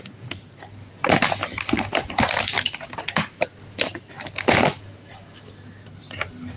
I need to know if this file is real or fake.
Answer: real